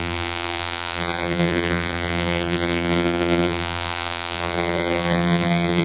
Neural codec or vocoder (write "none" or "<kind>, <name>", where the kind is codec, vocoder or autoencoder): vocoder, BigVGAN v2